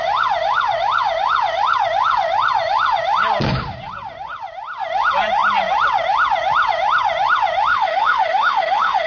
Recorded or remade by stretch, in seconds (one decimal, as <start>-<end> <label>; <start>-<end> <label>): 0.0-7.7 recorded; 7.7-9.1 remade

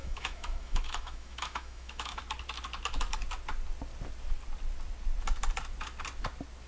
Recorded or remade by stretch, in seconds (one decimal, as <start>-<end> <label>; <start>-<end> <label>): 0.0-2.2 remade; 2.2-6.7 recorded